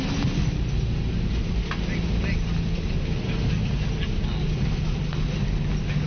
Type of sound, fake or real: real